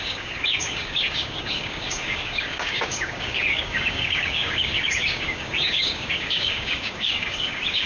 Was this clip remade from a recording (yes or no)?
yes